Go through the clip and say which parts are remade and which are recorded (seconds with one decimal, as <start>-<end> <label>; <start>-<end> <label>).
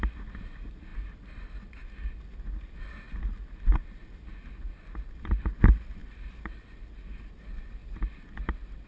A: 0.0-8.9 recorded